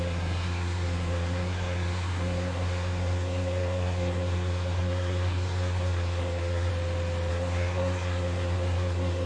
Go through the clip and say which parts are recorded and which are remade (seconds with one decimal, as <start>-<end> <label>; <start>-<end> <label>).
0.0-6.7 remade; 6.7-7.3 recorded; 7.3-9.3 remade